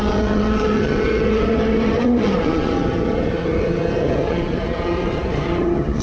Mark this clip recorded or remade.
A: remade